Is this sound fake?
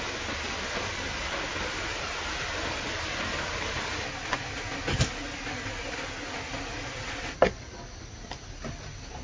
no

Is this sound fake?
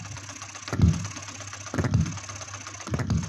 no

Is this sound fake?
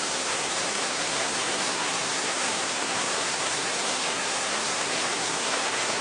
yes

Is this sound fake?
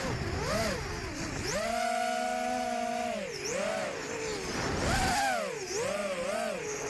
no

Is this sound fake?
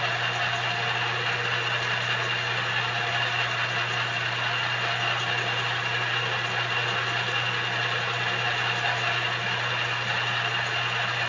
no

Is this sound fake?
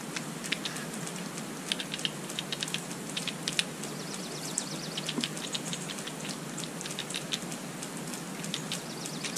no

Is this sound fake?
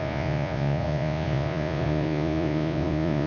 yes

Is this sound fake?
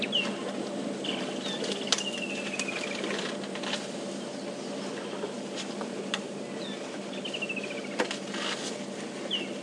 no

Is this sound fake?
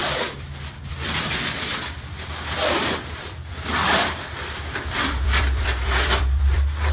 yes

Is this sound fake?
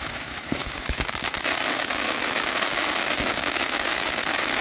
yes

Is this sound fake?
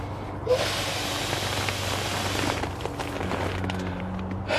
no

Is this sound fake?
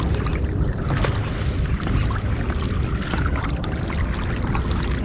no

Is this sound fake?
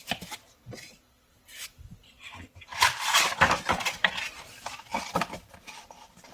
yes